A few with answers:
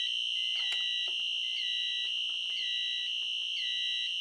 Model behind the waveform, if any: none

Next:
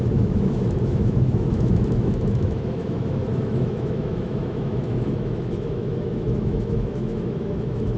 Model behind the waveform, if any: autoencoder, DAC-VAE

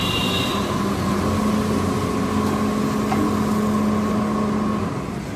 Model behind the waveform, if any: none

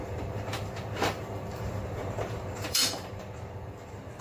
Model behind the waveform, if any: vocoder, BigVGAN v2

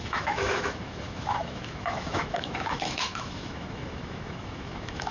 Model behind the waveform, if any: autoencoder, DAC-VAE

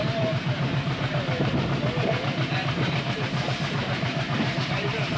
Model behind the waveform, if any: vocoder, BigVGAN v2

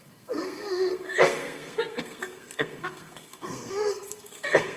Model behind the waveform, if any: codec, SNAC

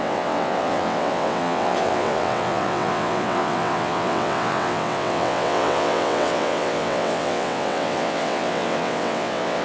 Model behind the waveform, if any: vocoder, WaveNeXt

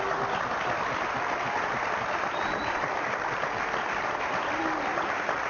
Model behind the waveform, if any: none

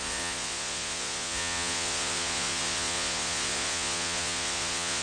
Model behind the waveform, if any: vocoder, Vocos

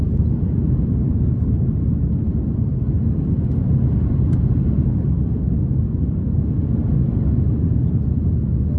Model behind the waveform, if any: none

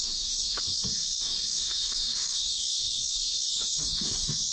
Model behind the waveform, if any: codec, DAC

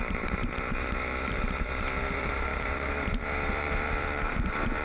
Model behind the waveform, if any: vocoder, BigVGAN v2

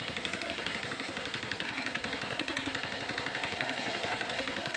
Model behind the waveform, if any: codec, SNAC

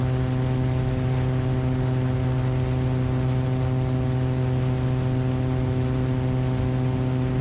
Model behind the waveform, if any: none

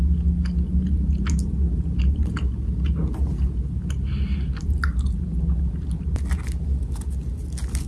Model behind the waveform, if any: none